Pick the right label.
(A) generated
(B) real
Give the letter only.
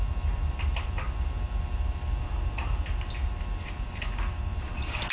B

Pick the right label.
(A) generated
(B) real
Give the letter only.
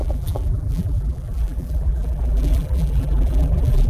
A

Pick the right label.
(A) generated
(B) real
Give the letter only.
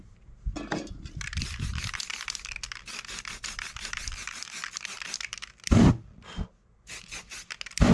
B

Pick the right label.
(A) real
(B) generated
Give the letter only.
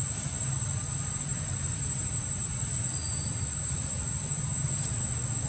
B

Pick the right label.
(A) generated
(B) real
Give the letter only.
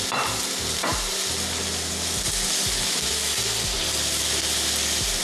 A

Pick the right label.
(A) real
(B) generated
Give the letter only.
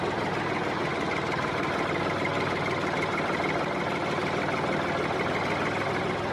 A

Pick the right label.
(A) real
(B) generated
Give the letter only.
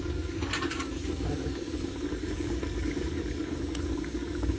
B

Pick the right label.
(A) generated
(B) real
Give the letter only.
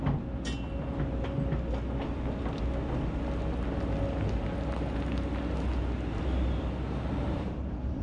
B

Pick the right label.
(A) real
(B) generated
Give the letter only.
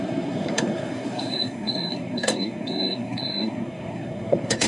B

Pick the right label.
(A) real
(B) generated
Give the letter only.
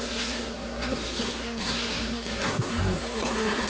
B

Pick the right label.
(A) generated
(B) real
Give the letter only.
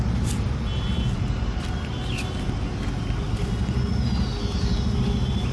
B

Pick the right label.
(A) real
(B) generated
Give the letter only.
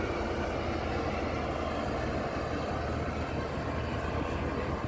A